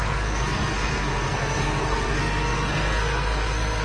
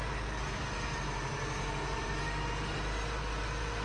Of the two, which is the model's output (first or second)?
first